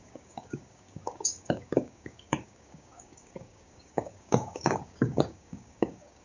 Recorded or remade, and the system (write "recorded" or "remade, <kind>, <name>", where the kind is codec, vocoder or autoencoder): remade, codec, DAC